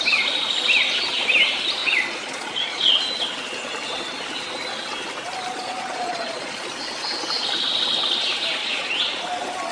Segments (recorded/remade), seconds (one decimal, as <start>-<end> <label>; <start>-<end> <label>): 0.0-1.8 recorded; 1.8-3.0 remade; 3.0-5.5 recorded; 5.5-6.7 remade; 6.7-8.6 recorded; 8.6-9.2 remade; 9.2-9.7 recorded